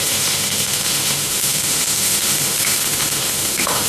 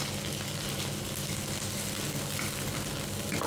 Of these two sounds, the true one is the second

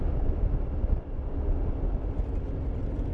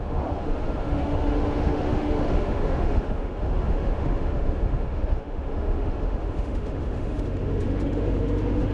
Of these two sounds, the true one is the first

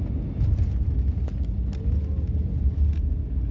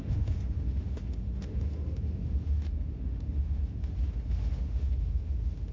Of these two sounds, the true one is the first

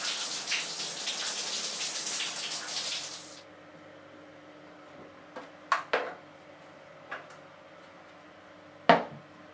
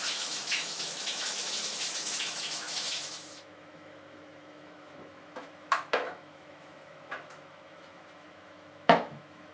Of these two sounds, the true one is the first